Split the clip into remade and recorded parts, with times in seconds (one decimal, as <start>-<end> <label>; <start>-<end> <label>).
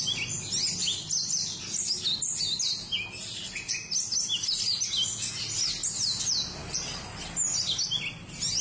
0.0-8.6 recorded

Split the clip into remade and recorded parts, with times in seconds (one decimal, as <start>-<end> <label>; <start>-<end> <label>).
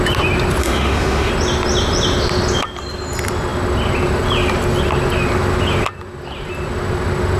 0.0-0.6 recorded; 0.6-1.3 remade; 1.3-7.4 recorded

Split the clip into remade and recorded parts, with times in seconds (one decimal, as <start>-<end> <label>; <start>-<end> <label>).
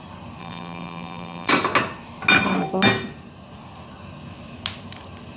0.0-0.4 recorded; 0.4-1.5 remade; 1.5-5.4 recorded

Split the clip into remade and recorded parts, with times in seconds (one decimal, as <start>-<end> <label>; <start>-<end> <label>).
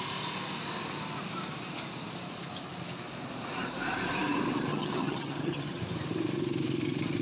0.0-4.7 recorded; 4.7-5.8 remade; 5.8-7.2 recorded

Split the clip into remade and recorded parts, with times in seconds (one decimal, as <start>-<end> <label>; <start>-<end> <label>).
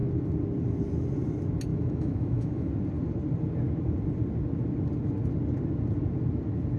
0.0-1.7 recorded; 1.7-2.7 remade; 2.7-6.8 recorded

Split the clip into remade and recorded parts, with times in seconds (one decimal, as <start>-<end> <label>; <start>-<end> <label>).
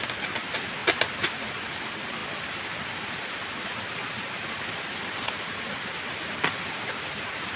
0.0-7.6 recorded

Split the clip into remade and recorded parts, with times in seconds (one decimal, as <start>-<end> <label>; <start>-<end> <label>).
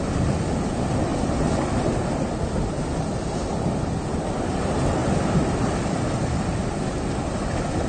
0.0-7.9 recorded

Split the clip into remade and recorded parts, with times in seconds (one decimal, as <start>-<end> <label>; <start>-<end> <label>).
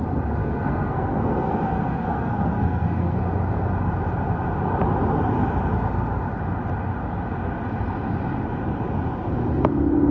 0.0-0.4 recorded; 0.4-3.2 remade; 3.2-10.1 recorded